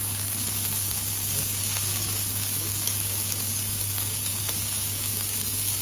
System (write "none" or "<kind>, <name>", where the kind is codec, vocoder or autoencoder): codec, DAC